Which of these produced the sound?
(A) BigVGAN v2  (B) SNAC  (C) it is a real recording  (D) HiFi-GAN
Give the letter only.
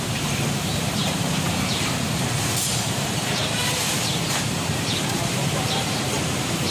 A